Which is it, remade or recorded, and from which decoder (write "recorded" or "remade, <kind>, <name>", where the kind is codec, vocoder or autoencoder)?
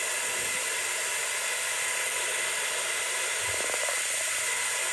recorded